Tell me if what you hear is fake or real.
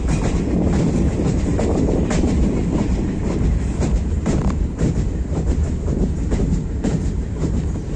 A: fake